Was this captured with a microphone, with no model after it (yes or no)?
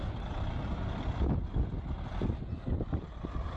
yes